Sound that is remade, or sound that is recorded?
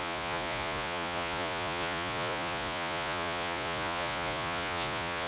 remade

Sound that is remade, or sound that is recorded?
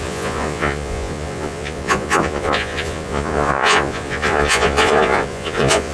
remade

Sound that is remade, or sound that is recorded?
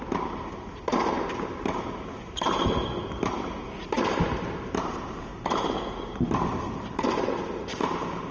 recorded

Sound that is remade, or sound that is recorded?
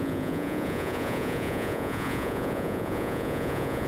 remade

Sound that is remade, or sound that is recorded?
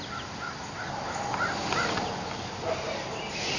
recorded